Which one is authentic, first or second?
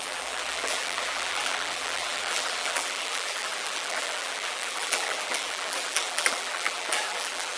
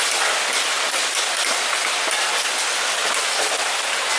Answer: second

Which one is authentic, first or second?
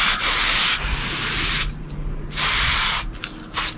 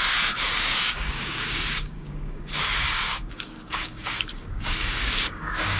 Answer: first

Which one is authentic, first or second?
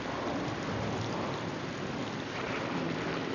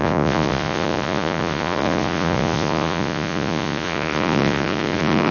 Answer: first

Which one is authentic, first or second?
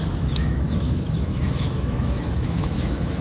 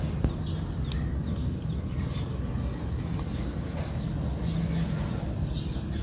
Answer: second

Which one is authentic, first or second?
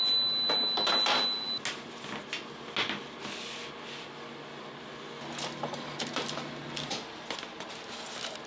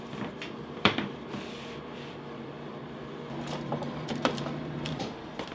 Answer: first